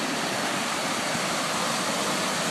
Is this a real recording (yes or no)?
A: yes